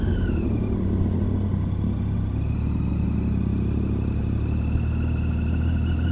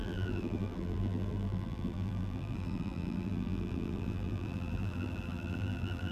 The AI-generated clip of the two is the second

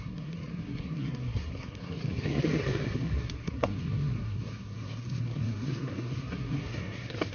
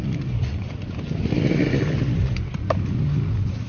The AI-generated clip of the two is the first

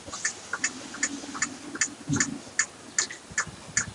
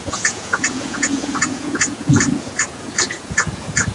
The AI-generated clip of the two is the second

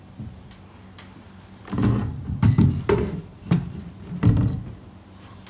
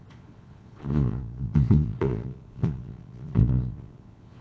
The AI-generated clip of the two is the second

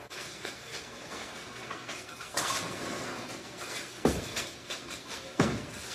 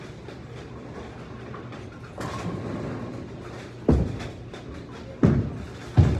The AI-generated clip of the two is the first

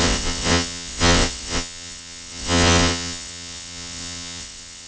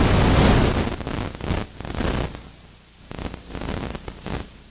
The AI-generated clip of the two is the first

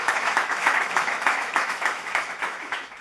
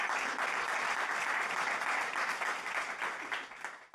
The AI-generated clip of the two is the first